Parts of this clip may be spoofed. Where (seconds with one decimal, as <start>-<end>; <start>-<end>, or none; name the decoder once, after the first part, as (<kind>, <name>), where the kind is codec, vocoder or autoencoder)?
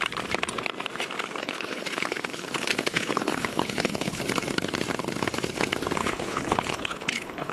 1.4-4.2 (codec, HILCodec); 6.0-7.5